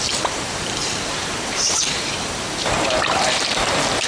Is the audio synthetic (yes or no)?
yes